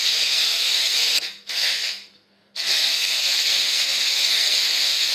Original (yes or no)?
no